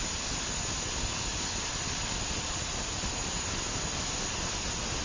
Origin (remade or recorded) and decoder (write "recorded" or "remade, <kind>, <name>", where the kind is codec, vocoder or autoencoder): recorded